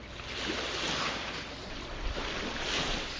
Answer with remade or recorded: recorded